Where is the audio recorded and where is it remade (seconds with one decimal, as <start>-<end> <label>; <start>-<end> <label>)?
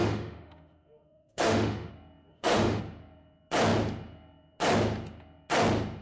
0.0-1.9 remade; 1.9-2.3 recorded; 2.3-2.8 remade; 2.8-6.0 recorded